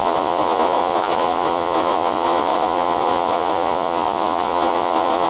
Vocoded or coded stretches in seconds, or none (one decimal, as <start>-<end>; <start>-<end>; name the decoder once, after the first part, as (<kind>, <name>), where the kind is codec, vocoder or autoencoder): 0.0-5.3 (vocoder, Vocos)